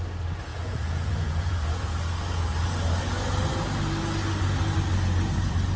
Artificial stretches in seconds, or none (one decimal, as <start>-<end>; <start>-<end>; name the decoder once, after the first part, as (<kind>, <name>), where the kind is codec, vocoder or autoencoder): 0.5-2.0 (vocoder, Vocos)